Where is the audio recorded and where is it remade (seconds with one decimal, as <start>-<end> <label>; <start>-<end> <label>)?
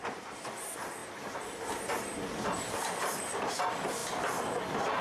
0.0-5.0 recorded